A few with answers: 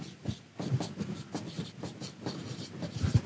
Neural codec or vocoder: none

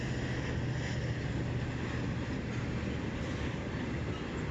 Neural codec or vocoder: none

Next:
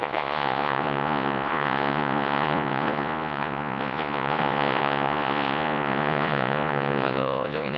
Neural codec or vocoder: vocoder, Vocos